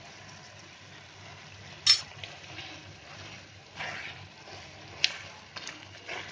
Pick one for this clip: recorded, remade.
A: recorded